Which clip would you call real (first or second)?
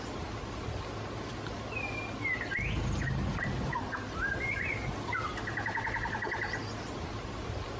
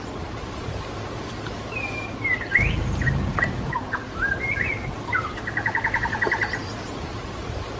first